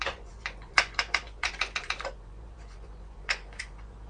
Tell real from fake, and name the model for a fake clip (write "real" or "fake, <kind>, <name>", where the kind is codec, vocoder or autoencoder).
fake, vocoder, Vocos